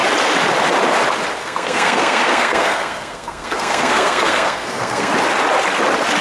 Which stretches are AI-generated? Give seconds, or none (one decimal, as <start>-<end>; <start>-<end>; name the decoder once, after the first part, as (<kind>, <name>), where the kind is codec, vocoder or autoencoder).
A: 1.4-5.1 (codec, SNAC)